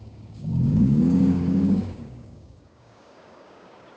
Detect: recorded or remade remade